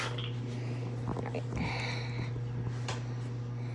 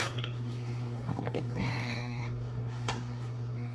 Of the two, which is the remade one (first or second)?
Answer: second